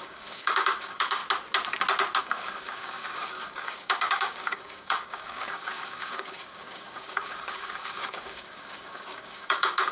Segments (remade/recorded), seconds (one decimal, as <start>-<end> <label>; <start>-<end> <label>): 0.0-1.2 remade; 1.2-2.2 recorded; 2.2-9.9 remade